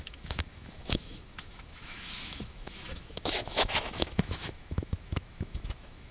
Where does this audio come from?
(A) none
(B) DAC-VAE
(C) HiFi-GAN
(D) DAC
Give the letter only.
B